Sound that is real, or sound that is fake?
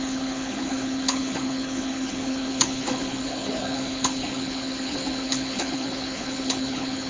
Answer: fake